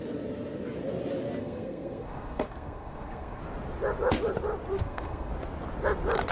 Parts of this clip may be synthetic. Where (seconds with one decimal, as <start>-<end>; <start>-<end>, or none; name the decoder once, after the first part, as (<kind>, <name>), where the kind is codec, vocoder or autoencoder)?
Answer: 1.4-3.4 (codec, SNAC); 4.8-5.3